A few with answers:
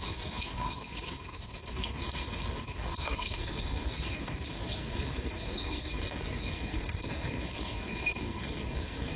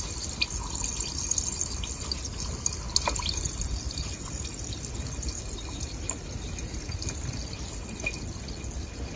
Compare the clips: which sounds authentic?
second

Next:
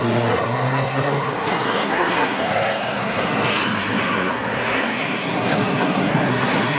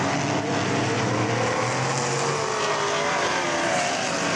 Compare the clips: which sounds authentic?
second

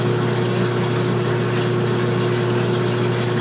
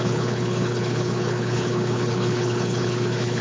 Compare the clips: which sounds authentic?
first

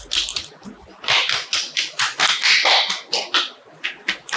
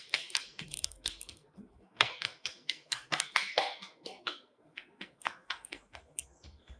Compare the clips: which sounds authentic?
first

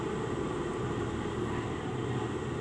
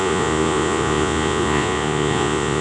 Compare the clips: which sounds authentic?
first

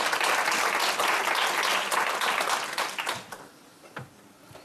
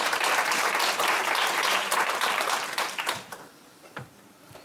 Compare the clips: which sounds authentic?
first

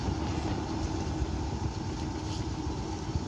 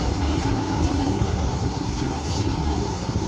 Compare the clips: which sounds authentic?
first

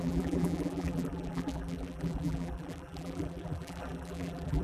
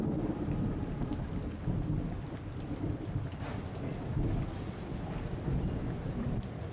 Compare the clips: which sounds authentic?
second